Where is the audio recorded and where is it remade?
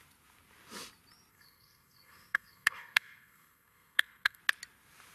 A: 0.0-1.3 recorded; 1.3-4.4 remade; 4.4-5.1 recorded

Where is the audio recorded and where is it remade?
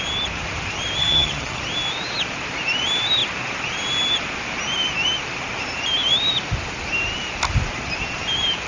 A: 0.0-1.0 recorded; 1.0-1.6 remade; 1.6-8.7 recorded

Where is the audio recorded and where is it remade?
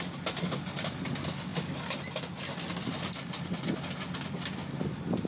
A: 0.0-5.3 recorded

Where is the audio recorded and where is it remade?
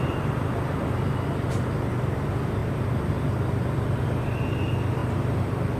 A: 0.0-5.8 recorded